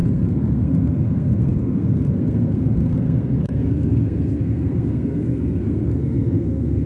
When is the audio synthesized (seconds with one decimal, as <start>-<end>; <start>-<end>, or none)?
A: 0.0-6.9